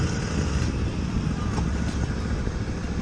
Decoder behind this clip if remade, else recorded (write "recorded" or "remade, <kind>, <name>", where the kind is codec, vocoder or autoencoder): recorded